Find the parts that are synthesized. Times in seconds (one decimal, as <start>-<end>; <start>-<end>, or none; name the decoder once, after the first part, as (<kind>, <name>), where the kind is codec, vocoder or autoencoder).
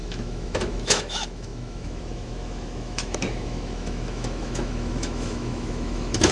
0.0-6.3 (autoencoder, DAC-VAE)